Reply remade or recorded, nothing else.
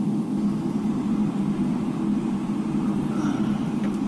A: recorded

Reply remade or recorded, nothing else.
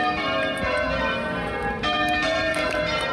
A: remade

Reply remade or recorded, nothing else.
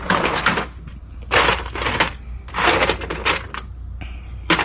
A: recorded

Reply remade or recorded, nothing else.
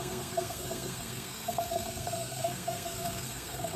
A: remade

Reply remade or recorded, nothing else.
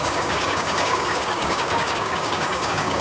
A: remade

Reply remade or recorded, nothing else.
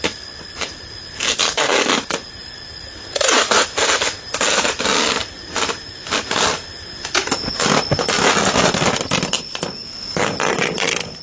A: recorded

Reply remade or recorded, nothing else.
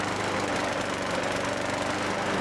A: remade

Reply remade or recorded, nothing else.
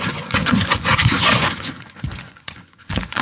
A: remade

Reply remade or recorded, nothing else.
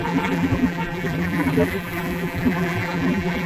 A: remade